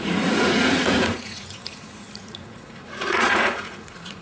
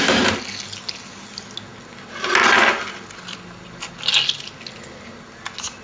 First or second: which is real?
second